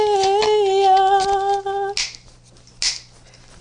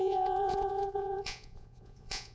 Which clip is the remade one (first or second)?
second